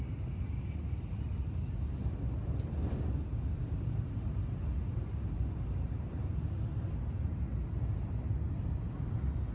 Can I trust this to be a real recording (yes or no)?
yes